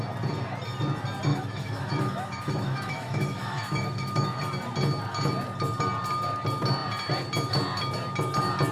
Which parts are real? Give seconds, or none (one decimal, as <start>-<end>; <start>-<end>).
0.0-1.3; 4.4-8.7